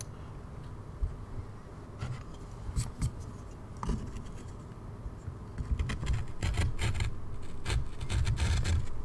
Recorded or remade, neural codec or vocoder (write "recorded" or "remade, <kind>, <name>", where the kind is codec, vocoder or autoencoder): recorded